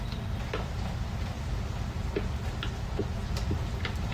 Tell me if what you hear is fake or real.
real